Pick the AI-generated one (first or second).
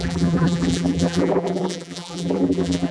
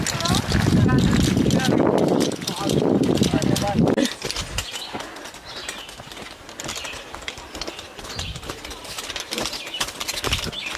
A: first